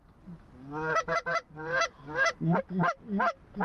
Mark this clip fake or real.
real